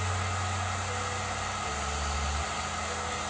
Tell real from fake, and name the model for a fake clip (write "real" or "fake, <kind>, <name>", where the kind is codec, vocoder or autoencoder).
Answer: real